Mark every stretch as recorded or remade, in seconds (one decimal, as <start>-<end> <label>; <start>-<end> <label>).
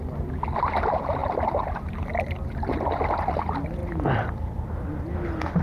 0.0-5.6 recorded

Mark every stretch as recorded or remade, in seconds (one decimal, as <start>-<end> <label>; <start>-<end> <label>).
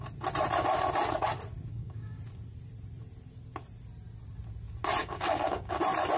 0.0-1.7 recorded; 1.7-2.2 remade; 2.2-5.0 recorded; 5.0-5.8 remade; 5.8-6.2 recorded